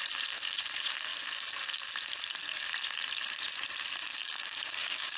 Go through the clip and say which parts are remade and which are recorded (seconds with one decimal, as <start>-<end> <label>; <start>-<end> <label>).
0.0-4.1 recorded; 4.1-5.2 remade